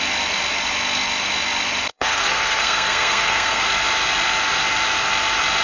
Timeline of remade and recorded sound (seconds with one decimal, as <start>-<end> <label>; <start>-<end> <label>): 0.0-1.9 recorded; 1.9-3.6 remade; 3.6-5.6 recorded